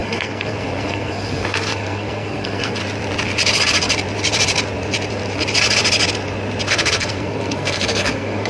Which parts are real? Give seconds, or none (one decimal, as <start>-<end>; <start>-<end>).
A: 2.8-6.7